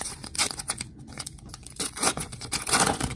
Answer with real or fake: fake